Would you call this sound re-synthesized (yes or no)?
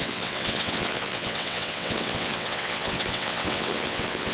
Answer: yes